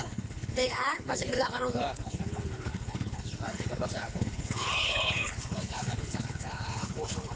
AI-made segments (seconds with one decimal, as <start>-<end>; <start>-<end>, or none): 0.0-7.4